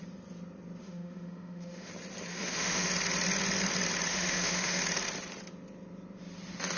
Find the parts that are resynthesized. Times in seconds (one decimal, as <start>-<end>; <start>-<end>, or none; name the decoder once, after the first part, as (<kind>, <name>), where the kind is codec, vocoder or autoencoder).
0.8-1.9 (autoencoder, DAC-VAE); 2.3-2.9; 4.1-4.8